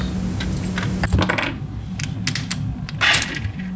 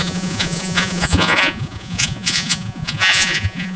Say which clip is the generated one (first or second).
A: second